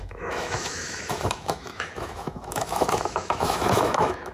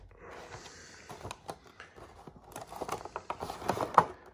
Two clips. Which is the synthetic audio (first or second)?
first